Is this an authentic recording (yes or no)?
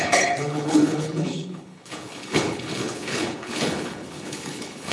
no